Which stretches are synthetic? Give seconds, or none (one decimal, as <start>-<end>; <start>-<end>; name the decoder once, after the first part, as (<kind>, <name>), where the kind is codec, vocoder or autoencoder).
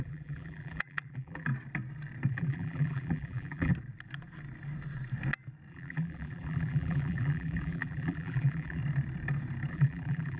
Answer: 0.0-1.5 (vocoder, BigVGAN v2); 2.3-3.7; 5.7-8.8; 9.7-10.4